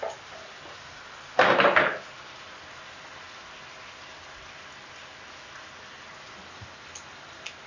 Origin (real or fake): real